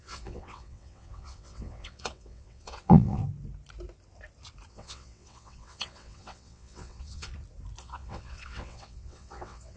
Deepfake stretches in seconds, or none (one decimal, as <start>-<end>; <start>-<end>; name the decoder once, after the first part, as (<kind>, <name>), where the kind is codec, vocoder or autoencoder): 0.0-3.2 (vocoder, WaveNeXt); 4.7-7.3; 7.8-9.8

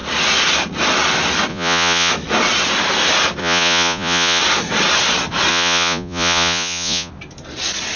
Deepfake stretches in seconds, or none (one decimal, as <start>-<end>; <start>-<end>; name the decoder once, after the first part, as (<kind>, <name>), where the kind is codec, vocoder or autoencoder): 1.5-2.1 (vocoder, Vocos); 3.4-4.4; 5.5-7.1

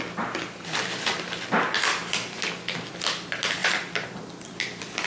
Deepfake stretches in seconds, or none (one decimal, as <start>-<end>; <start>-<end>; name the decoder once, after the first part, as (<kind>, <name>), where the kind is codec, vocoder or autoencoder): none

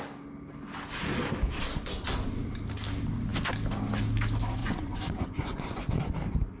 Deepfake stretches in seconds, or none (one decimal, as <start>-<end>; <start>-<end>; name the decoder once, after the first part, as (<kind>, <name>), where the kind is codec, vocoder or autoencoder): 4.6-6.1 (vocoder, Vocos)

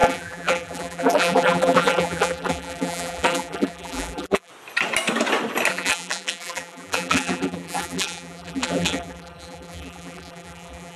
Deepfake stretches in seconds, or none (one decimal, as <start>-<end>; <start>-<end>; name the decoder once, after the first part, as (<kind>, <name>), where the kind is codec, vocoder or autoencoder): 0.0-4.5 (vocoder, BigVGAN v2); 5.7-11.0

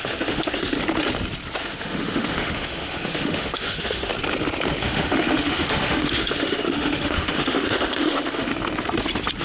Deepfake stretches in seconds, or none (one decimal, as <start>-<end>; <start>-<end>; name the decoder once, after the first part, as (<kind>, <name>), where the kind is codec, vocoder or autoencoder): 0.0-0.7 (autoencoder, DAC-VAE); 1.6-4.1; 4.8-8.5

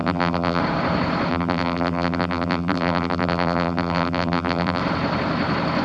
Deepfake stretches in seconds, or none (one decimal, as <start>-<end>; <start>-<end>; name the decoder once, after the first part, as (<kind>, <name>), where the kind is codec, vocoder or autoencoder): 0.0-0.6 (vocoder, BigVGAN v2); 1.3-4.8

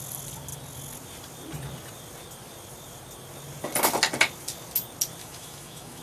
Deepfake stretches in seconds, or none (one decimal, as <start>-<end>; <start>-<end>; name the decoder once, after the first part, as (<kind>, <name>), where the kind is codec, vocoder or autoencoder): 5.2-6.0 (autoencoder, DAC-VAE)